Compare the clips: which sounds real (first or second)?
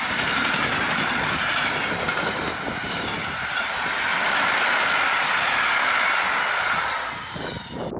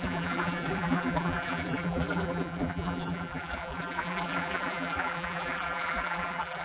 first